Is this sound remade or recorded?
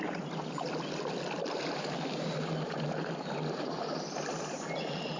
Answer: recorded